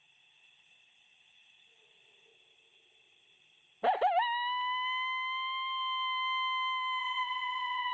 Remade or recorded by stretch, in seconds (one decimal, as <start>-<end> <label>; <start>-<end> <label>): 0.0-2.3 remade; 2.3-7.0 recorded; 7.0-7.9 remade